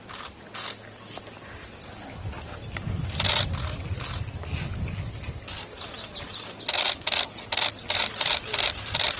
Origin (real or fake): real